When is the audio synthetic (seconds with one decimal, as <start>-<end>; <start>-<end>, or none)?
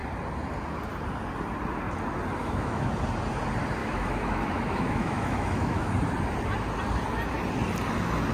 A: 2.4-2.9; 3.8-5.9